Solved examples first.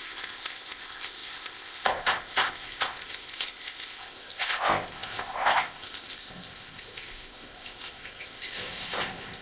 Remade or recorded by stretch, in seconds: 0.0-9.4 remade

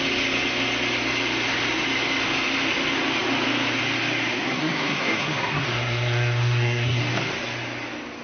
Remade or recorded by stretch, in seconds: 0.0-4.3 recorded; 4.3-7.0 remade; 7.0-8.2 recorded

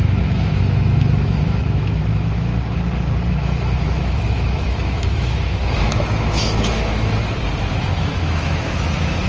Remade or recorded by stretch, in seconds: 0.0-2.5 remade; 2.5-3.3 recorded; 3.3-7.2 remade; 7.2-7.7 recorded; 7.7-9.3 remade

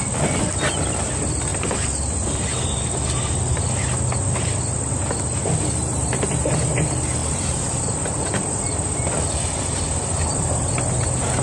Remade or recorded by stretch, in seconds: 0.0-11.4 recorded

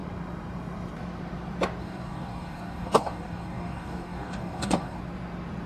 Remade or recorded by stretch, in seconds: 0.0-1.8 recorded; 1.8-5.0 remade; 5.0-5.7 recorded

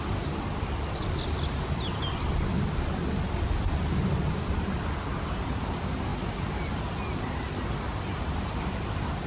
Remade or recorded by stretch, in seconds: 0.0-9.3 recorded